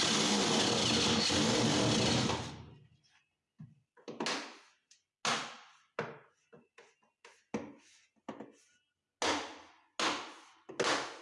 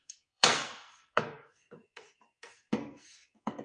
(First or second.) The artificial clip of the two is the second